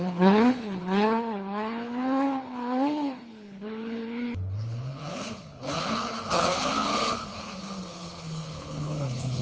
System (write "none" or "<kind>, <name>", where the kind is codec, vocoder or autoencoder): codec, HILCodec